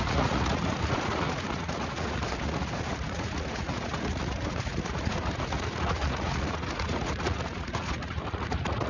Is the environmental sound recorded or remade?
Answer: remade